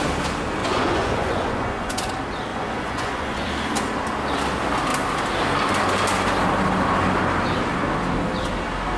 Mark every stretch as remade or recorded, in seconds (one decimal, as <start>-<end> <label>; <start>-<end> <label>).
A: 0.0-0.6 recorded; 0.6-2.1 remade; 2.1-2.5 recorded; 2.5-3.5 remade; 3.5-9.0 recorded